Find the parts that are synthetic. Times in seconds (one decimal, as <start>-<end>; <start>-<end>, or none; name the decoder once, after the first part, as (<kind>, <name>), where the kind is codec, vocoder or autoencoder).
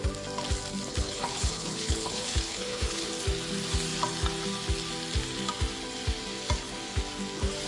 0.9-3.1 (codec, HILCodec)